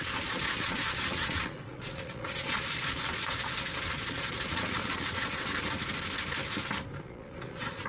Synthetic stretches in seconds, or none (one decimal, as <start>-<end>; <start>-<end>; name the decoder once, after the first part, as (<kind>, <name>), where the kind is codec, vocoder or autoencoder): 0.0-5.5 (vocoder, Vocos); 7.0-7.9